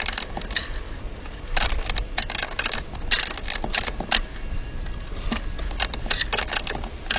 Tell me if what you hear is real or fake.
real